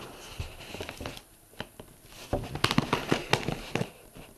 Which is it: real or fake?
real